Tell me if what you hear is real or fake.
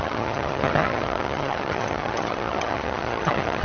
fake